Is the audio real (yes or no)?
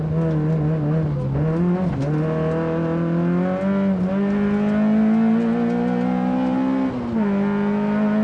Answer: yes